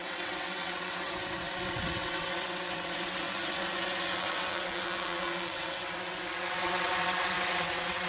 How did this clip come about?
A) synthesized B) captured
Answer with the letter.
A